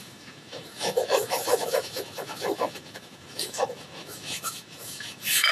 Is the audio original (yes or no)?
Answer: no